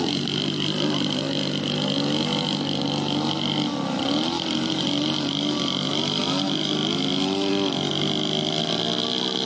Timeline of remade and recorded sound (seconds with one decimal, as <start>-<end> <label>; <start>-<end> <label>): 0.0-9.5 recorded